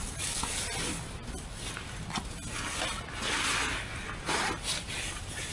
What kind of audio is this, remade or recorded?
recorded